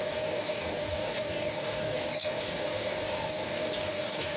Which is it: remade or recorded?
remade